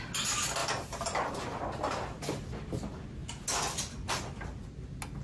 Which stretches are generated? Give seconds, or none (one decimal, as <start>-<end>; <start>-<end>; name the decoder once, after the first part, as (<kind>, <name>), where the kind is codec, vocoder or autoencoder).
0.6-2.4 (vocoder, BigVGAN v2)